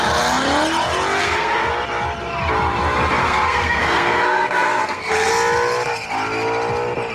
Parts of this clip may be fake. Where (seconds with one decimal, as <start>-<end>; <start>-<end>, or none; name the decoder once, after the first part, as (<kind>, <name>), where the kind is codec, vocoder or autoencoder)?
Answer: 1.2-1.7 (codec, SNAC); 3.2-5.3